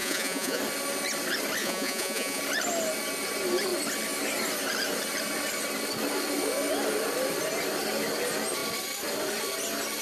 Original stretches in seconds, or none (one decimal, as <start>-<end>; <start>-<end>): 0.6-1.6; 2.4-10.0